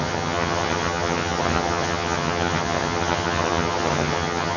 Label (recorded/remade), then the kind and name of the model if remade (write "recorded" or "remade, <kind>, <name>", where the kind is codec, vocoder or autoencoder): remade, vocoder, HiFi-GAN